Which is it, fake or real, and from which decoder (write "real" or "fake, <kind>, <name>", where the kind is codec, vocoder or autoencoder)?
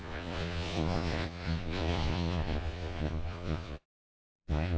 fake, vocoder, Vocos